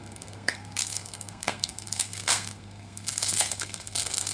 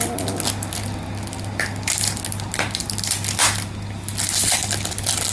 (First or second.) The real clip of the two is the second